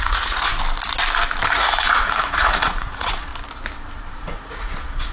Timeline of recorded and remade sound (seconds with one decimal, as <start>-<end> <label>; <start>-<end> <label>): 0.0-0.5 remade; 0.5-1.5 recorded; 1.5-3.3 remade; 3.3-4.2 recorded; 4.2-5.1 remade